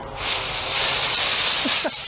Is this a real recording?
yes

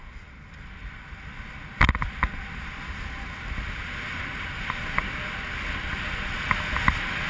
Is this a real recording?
yes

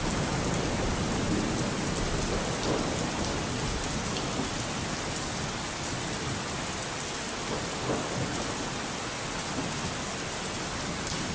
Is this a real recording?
yes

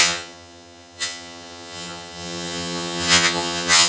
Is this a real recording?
no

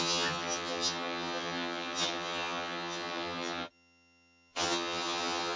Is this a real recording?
no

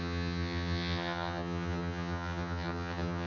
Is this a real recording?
no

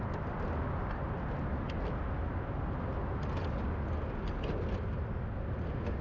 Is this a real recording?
yes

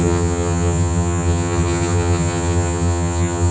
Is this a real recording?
no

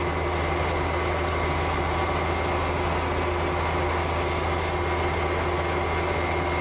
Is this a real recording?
yes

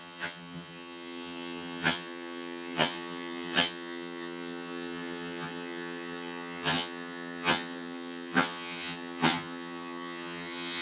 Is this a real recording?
no